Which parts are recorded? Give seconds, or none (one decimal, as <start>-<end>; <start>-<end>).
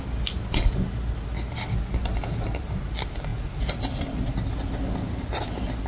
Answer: 0.0-2.0; 2.8-5.9